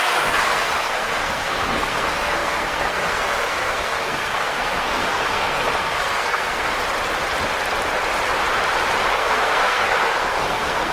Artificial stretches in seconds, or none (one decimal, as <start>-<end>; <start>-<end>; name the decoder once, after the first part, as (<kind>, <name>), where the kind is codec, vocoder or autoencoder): 0.0-6.7 (codec, SNAC); 9.1-10.9